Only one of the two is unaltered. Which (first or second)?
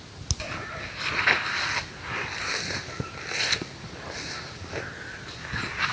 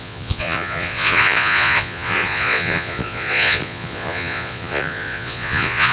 first